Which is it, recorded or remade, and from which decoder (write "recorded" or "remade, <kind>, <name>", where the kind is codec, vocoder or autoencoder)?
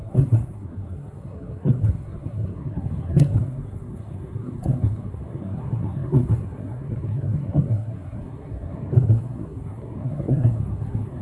remade, codec, SNAC